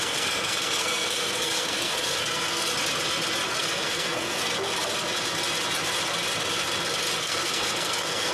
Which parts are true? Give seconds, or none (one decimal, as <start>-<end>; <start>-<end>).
2.7-3.5; 4.4-7.2